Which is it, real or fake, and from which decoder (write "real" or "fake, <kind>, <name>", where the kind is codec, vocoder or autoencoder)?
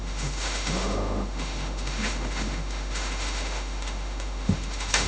fake, autoencoder, DAC-VAE